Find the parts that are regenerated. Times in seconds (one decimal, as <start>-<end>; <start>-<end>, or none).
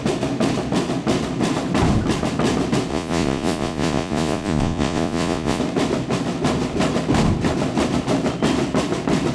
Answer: 2.9-5.6